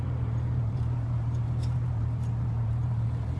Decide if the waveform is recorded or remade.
remade